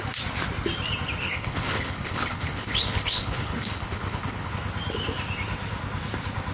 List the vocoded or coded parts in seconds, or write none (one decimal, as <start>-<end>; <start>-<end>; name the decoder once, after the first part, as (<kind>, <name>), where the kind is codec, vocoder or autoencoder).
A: 1.2-4.5 (codec, HILCodec)